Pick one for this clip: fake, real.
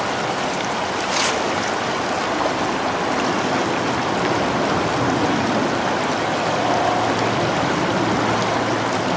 real